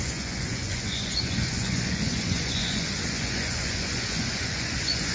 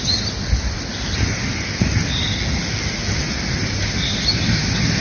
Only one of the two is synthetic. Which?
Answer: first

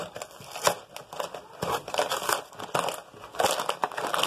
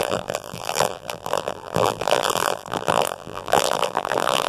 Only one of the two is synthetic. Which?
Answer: second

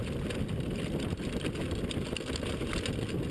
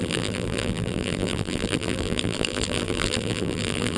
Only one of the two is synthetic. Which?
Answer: second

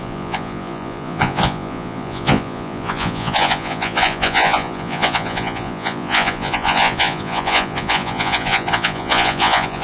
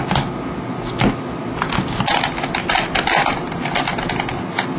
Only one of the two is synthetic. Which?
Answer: first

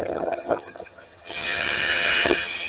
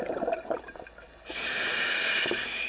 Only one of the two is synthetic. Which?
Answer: first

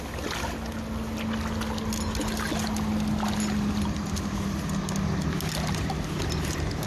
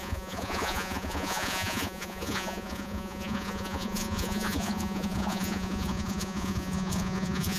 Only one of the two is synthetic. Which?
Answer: second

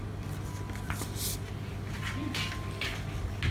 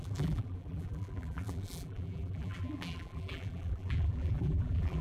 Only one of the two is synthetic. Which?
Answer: second